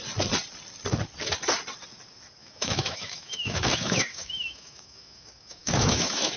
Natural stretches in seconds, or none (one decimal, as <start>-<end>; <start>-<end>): 0.0-2.4